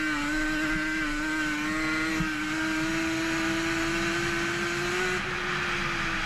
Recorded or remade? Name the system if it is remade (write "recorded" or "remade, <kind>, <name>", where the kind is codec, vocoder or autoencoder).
recorded